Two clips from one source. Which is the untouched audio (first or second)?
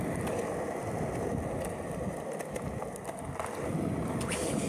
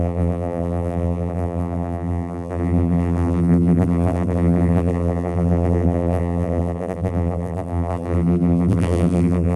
first